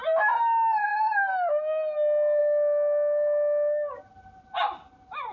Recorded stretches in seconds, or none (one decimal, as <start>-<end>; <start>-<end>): 0.0-5.3